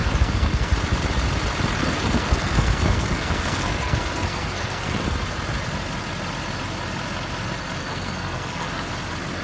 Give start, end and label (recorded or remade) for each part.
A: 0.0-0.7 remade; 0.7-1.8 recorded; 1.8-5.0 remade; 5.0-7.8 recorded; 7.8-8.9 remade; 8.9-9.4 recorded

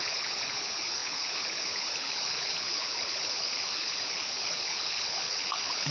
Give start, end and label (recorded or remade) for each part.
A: 0.0-5.9 remade

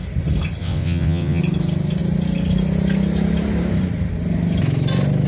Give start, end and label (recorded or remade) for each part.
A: 0.0-0.6 recorded; 0.6-1.4 remade; 1.4-5.3 recorded